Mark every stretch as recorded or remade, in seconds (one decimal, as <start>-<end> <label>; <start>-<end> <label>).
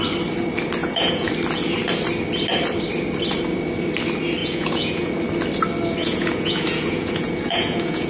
0.0-0.8 recorded; 0.8-1.3 remade; 1.3-4.4 recorded; 4.4-5.1 remade; 5.1-6.0 recorded; 6.0-8.1 remade